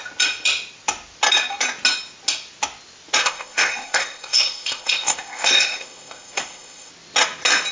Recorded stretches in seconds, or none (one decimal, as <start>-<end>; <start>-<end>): 0.0-3.2; 6.9-7.7